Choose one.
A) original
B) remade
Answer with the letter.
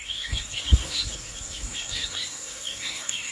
B